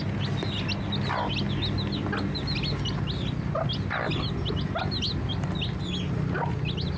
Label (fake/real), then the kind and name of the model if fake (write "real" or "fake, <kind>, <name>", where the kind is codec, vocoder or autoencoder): real